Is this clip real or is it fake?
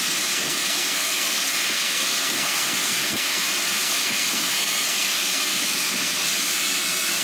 fake